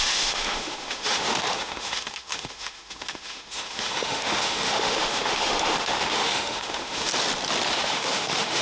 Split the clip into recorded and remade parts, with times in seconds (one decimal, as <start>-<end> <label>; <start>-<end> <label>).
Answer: 0.0-7.1 remade; 7.1-7.7 recorded; 7.7-8.6 remade